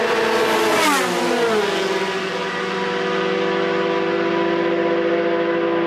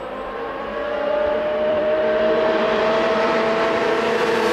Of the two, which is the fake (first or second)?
second